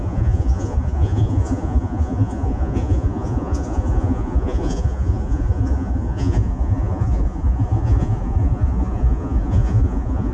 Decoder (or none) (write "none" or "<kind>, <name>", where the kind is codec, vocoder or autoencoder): vocoder, Vocos